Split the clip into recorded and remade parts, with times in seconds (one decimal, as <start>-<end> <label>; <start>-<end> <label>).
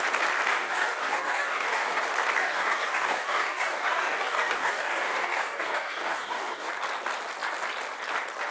0.0-0.5 recorded; 0.5-2.0 remade; 2.0-2.4 recorded; 2.4-6.7 remade; 6.7-8.5 recorded